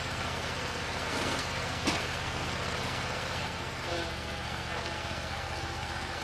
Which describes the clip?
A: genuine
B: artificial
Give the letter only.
B